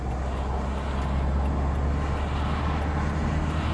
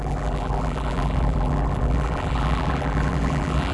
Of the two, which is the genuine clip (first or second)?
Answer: first